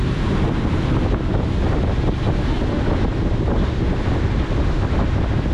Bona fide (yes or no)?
yes